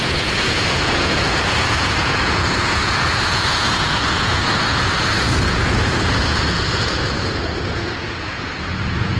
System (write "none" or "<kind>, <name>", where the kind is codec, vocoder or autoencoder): vocoder, Vocos